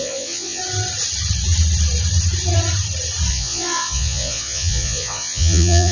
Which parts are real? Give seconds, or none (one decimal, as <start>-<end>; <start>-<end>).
0.6-3.3